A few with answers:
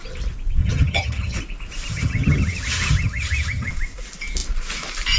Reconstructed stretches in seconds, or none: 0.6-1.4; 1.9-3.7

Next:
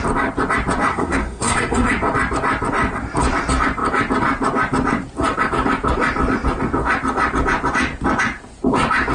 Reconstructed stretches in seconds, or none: 0.9-1.9

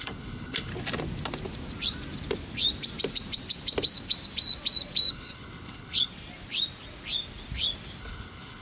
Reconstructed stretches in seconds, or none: 0.0-0.7; 5.1-6.1; 8.0-8.6

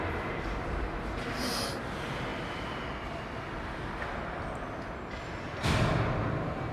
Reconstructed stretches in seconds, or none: none

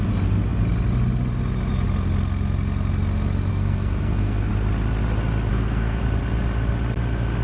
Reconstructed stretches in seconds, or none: 3.5-4.5; 5.5-6.0

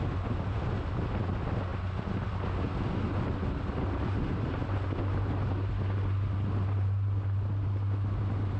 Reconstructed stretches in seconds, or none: none